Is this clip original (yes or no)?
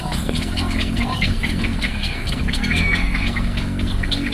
no